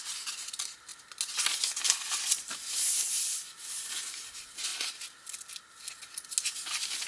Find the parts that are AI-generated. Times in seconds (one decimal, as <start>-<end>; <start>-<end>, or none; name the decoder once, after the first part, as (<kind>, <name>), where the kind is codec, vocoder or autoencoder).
none